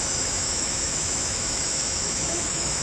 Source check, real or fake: fake